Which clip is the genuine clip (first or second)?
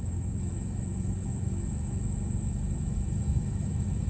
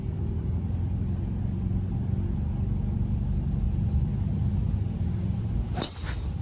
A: second